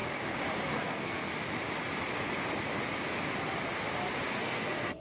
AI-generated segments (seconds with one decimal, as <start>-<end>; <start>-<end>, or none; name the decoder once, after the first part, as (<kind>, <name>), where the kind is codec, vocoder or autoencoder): 0.7-1.3 (codec, SNAC); 4.3-5.0